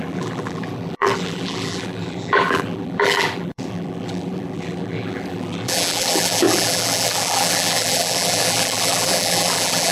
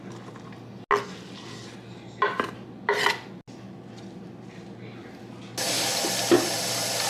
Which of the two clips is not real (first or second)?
first